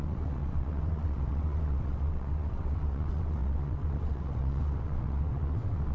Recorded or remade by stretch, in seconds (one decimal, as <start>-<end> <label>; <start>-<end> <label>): 0.0-5.9 remade

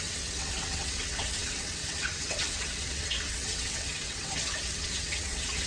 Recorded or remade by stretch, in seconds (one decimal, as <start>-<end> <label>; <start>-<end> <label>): 0.0-5.7 remade

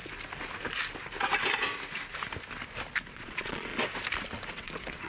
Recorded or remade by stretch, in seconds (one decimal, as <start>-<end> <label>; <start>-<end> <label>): 0.0-3.1 recorded; 3.1-3.7 remade; 3.7-4.5 recorded; 4.5-5.1 remade